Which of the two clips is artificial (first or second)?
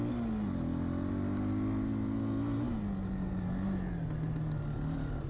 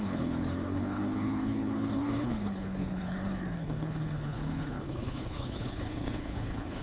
second